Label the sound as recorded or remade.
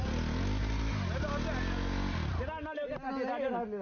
recorded